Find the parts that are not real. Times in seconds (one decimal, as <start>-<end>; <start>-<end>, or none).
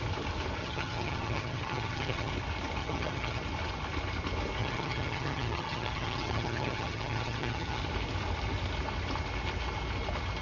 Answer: 0.6-2.3; 2.8-3.4; 4.6-7.8